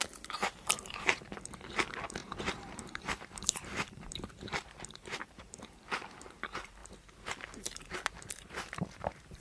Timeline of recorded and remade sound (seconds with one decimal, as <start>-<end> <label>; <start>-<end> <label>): 0.0-6.8 remade; 6.8-8.3 recorded; 8.3-9.4 remade